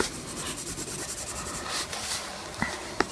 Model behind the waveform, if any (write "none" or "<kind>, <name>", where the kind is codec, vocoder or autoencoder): none